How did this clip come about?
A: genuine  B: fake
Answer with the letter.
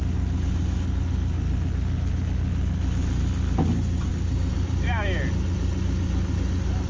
A